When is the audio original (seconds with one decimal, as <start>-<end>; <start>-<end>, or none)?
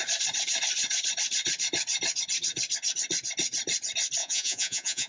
0.0-4.2